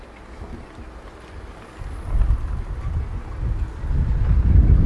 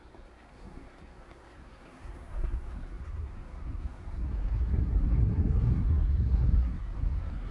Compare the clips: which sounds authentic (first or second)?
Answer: first